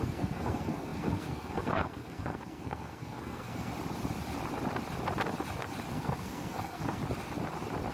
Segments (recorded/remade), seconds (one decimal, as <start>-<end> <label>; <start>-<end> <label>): 0.0-3.7 remade; 3.7-5.9 recorded; 5.9-7.0 remade; 7.0-7.9 recorded